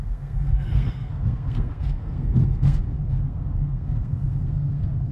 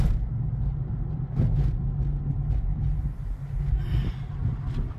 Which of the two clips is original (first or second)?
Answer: second